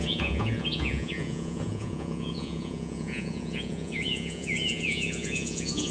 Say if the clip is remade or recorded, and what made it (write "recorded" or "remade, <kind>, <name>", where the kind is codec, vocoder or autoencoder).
remade, vocoder, Vocos